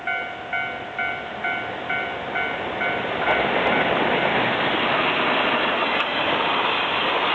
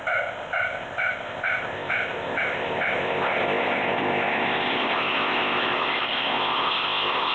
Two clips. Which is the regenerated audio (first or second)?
second